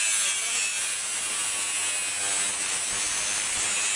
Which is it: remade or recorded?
recorded